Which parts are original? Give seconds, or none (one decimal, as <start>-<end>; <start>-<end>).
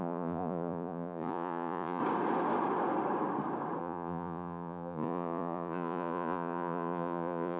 2.0-3.8